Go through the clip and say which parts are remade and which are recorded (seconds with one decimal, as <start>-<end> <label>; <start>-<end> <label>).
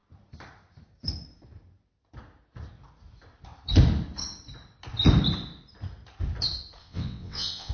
0.0-6.8 recorded; 6.8-7.7 remade